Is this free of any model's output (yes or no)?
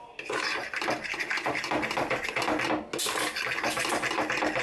yes